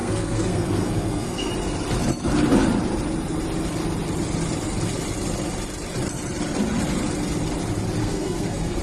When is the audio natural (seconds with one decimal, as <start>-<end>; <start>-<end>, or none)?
1.5-8.0